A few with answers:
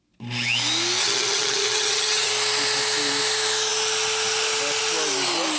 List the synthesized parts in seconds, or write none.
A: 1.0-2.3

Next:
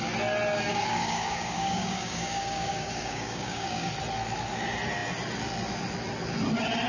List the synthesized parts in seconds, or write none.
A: 0.7-3.9

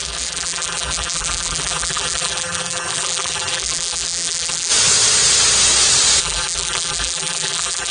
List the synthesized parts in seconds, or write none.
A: 0.0-4.7; 6.2-7.9

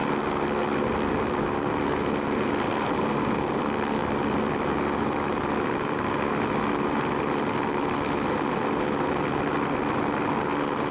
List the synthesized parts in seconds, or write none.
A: none

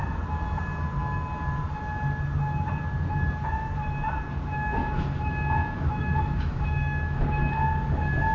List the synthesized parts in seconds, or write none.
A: 4.8-7.2

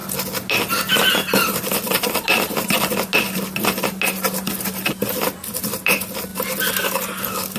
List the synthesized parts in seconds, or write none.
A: none

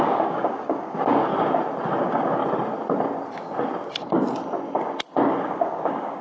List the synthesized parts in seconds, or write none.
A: 0.0-1.3; 2.0-2.4; 5.4-6.2

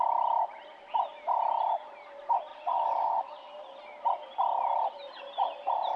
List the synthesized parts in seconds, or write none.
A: 2.5-3.5